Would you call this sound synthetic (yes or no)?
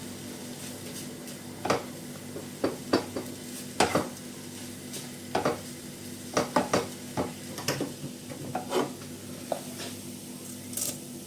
no